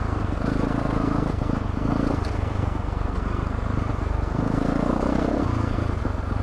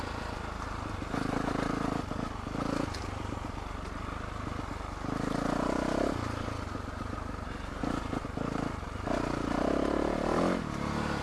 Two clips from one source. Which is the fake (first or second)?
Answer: first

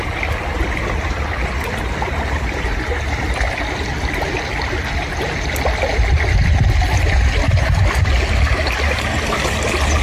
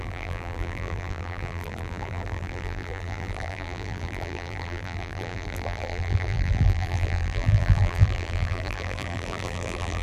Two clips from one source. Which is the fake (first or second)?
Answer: second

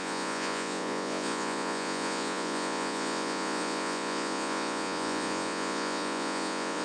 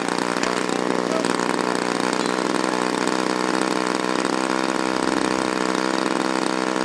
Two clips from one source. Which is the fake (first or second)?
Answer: first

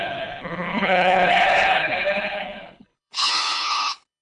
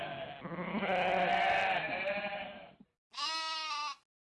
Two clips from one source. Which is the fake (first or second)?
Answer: first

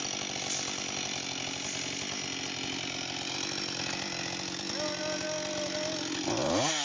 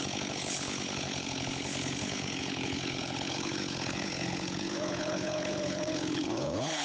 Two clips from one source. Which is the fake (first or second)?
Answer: second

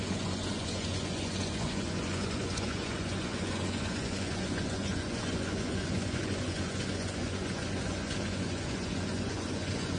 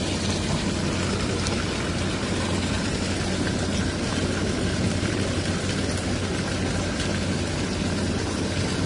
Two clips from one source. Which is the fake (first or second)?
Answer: first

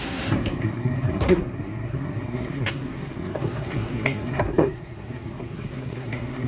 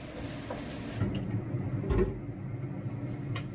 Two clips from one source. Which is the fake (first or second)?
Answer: first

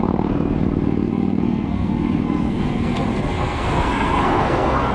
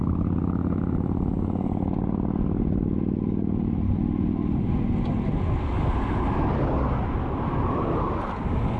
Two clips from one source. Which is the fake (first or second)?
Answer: first